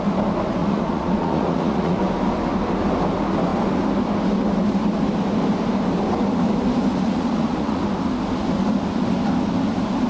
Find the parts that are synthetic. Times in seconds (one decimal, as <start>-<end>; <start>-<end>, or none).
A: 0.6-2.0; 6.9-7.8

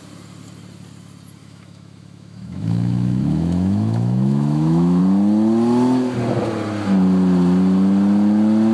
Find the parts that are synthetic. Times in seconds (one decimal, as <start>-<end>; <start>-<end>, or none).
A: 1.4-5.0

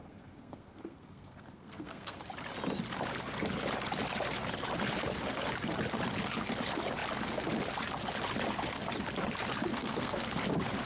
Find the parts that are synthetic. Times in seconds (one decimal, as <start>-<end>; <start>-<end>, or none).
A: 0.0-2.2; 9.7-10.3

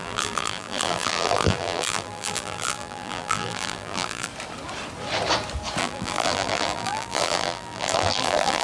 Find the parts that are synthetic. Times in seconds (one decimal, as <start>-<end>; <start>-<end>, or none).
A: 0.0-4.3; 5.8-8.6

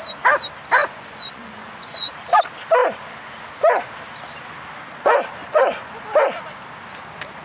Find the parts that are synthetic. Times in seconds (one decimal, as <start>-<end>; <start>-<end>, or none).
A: 0.8-2.1; 5.4-6.0

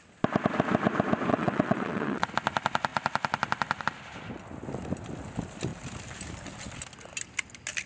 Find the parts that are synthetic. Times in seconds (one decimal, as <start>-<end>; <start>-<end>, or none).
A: 1.3-2.3

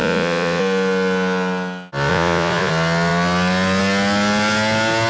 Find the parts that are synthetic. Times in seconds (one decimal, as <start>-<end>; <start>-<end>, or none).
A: 0.0-0.6; 2.1-2.7